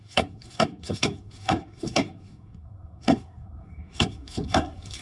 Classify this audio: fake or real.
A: fake